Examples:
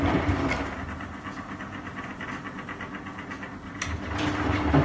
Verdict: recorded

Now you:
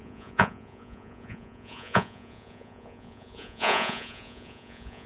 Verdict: remade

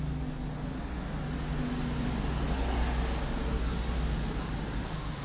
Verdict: recorded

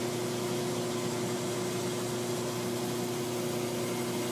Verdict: recorded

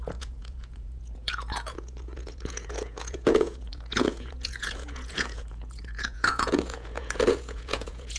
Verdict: remade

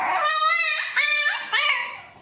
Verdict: recorded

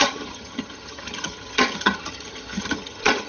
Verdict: remade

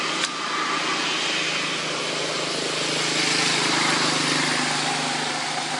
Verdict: recorded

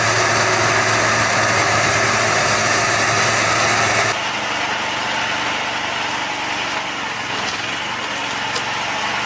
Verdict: recorded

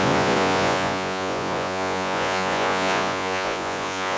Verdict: remade